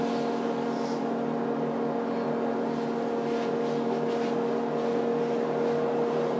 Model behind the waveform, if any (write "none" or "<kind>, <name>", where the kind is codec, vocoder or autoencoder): none